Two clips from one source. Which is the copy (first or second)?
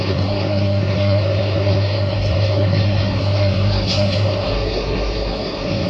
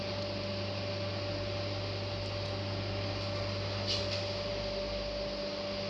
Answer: first